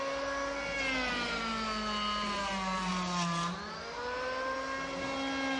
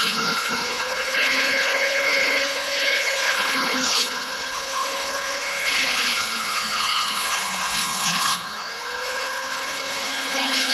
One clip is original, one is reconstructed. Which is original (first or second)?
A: first